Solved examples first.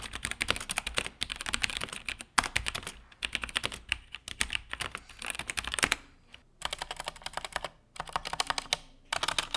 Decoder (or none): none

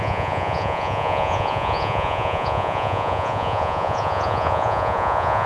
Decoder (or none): vocoder, Vocos